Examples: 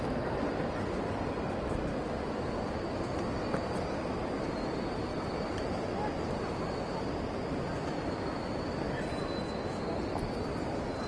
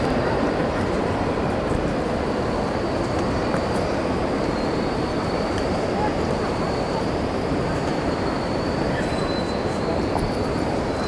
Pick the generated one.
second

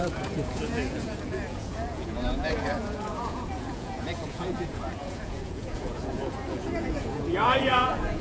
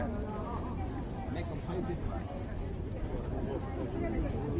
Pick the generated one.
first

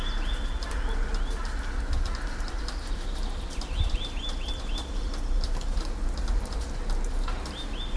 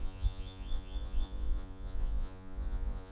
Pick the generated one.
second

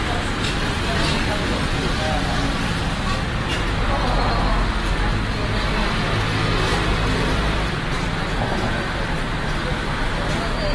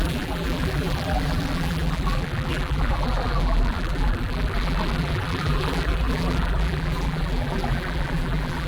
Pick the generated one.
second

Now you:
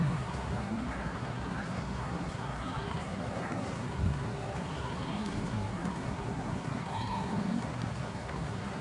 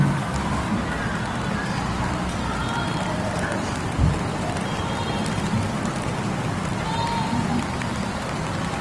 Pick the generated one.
first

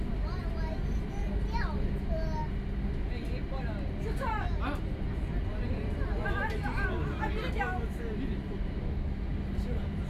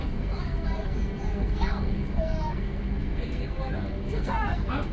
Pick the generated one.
second